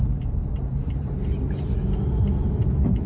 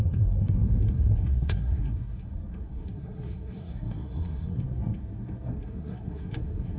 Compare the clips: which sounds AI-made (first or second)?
second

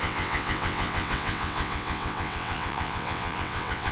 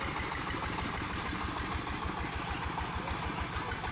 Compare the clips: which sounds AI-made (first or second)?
first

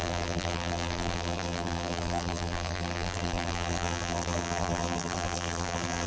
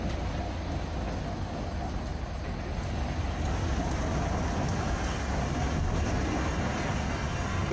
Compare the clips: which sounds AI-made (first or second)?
first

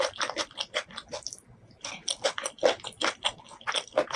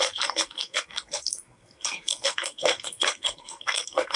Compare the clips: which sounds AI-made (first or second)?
second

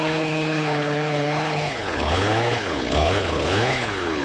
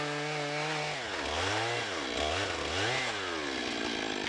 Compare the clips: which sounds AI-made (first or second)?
first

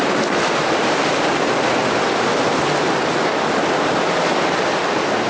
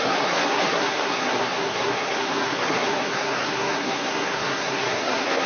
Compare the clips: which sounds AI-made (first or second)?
second